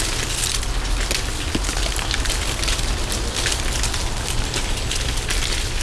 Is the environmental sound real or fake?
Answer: real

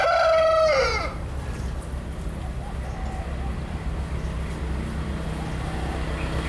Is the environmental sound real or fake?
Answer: real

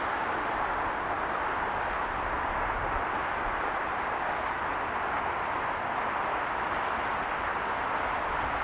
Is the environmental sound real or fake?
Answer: real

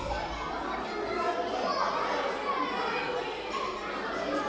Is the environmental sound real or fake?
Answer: real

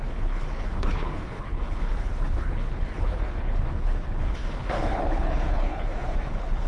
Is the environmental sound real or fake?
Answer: fake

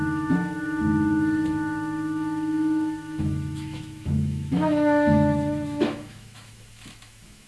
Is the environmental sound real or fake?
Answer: fake